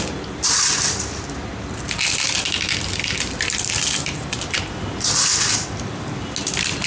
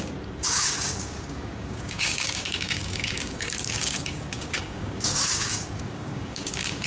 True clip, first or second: first